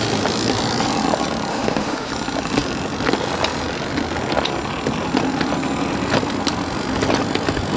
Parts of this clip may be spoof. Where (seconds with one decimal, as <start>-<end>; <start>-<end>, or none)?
1.5-2.1